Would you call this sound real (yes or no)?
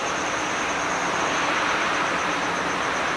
yes